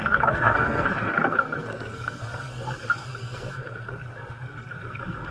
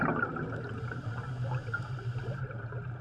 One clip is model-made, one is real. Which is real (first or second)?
second